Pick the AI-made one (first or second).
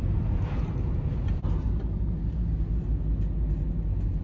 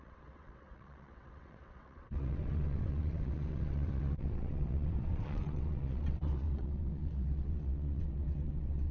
second